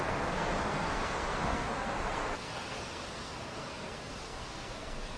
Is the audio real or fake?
fake